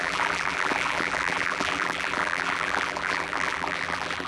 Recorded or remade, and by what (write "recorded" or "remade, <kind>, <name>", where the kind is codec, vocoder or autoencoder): remade, vocoder, BigVGAN v2